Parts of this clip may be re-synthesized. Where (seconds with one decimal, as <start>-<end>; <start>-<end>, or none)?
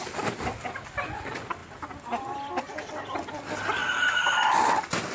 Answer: none